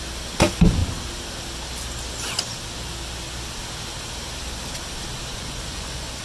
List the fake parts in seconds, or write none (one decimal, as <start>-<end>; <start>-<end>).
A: 5.3-6.2